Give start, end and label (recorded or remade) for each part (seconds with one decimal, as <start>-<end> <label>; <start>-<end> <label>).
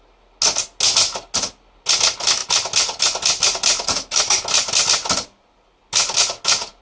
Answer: 0.0-6.8 recorded